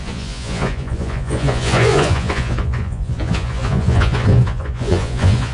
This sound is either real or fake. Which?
fake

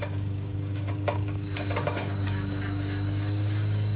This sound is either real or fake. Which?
fake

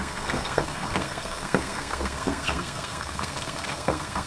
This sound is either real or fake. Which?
fake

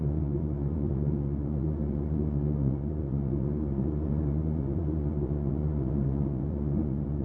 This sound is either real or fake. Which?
fake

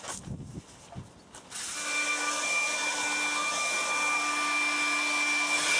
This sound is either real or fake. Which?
real